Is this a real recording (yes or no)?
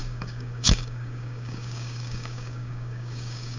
no